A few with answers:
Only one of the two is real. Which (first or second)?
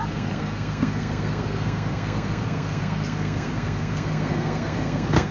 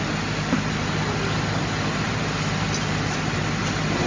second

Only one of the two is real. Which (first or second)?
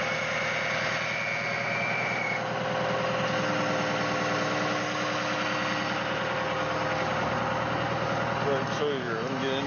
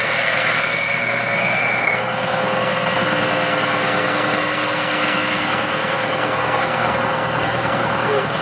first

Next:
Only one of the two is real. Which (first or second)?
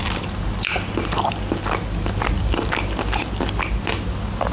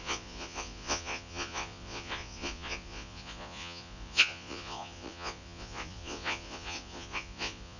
first